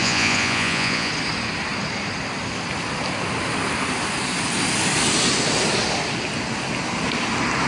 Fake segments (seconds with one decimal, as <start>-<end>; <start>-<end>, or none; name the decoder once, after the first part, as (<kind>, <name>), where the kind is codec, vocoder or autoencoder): 0.0-1.1 (vocoder, Vocos)